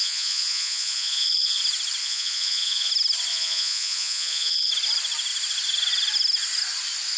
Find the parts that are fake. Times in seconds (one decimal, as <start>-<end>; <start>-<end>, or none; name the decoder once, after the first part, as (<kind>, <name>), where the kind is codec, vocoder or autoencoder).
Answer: 0.0-1.6 (vocoder, Vocos); 2.0-2.9; 3.3-4.7